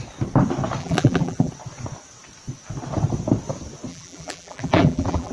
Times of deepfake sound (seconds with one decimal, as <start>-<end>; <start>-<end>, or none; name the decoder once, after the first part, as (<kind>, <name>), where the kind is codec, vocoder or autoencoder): 0.8-1.5 (vocoder, BigVGAN v2); 3.9-5.3